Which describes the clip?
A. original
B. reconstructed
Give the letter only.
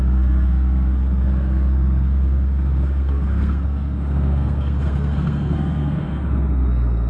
B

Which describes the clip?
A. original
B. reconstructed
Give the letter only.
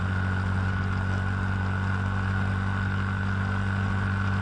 A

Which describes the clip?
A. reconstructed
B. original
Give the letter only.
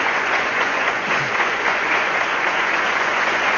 A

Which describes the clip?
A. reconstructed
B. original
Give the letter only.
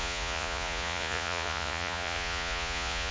A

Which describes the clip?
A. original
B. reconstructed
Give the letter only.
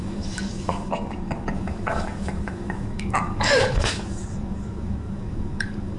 B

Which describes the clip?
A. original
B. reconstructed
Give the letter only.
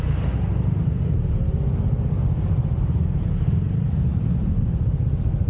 A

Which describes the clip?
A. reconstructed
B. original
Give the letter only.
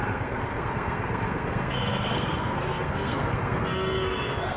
A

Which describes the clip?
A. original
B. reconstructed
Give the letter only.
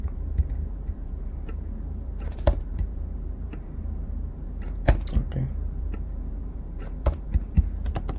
B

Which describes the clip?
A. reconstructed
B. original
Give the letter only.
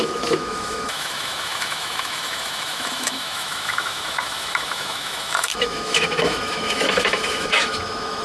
A